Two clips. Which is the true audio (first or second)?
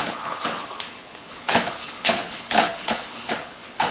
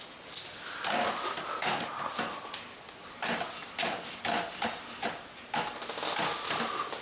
second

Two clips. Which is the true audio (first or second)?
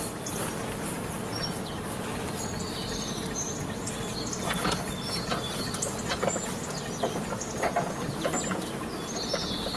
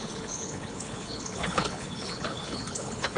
first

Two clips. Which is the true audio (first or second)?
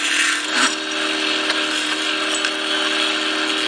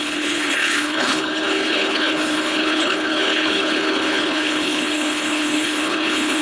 first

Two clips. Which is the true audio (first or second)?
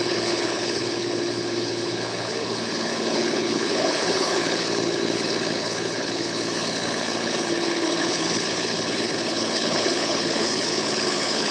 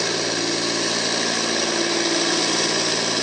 second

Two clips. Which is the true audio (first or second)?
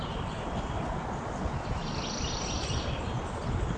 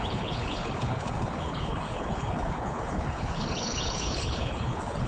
first